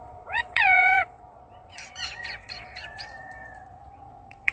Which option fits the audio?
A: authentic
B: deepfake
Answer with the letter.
B